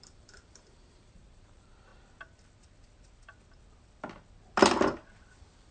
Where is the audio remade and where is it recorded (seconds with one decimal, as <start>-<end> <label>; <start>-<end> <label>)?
0.0-1.9 remade; 1.9-5.3 recorded; 5.3-5.7 remade